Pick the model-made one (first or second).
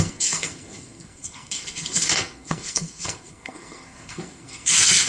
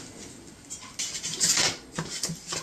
first